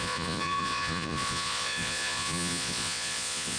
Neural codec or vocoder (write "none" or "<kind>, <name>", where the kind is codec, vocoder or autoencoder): vocoder, Vocos